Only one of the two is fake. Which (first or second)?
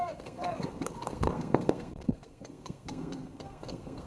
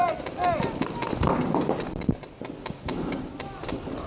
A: first